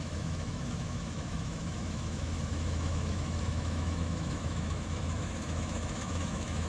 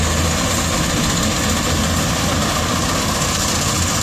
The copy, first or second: first